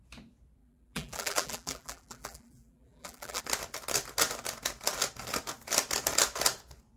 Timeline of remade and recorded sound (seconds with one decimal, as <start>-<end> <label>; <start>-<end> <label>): 0.0-0.6 recorded; 0.6-3.4 remade; 3.4-7.0 recorded

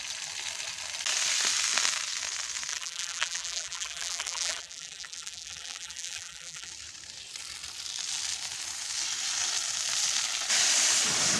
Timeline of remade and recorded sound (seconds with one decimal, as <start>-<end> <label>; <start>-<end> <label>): 0.0-2.7 recorded; 2.7-6.7 remade; 6.7-11.4 recorded

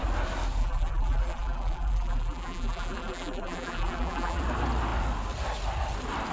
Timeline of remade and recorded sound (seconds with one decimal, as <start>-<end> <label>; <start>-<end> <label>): 0.0-0.6 recorded; 0.6-4.4 remade; 4.4-6.3 recorded

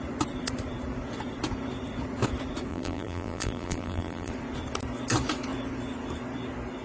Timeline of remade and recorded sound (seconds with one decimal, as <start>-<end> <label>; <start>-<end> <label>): 0.0-2.7 recorded; 2.7-4.3 remade; 4.3-6.8 recorded

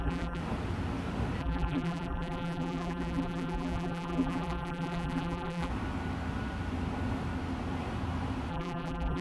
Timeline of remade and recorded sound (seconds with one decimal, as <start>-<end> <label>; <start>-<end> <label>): 0.0-0.4 remade; 0.4-1.4 recorded; 1.4-5.7 remade; 5.7-8.5 recorded; 8.5-9.2 remade

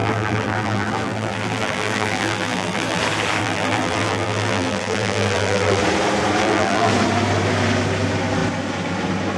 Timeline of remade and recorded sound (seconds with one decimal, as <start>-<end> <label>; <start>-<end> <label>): 0.0-3.0 remade; 3.0-3.4 recorded; 3.4-5.8 remade; 5.8-6.4 recorded; 6.4-6.9 remade; 6.9-9.4 recorded

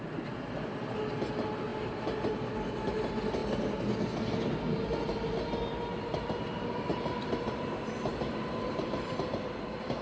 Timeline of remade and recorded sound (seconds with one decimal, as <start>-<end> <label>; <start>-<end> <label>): 0.0-1.7 recorded; 1.7-2.3 remade; 2.3-6.9 recorded; 6.9-7.5 remade; 7.5-8.1 recorded; 8.1-9.3 remade; 9.3-10.0 recorded

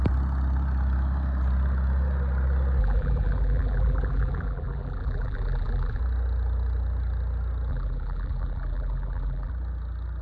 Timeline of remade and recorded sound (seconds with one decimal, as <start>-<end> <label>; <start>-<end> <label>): 0.0-2.8 recorded; 2.8-6.0 remade; 6.0-7.7 recorded; 7.7-9.5 remade; 9.5-10.2 recorded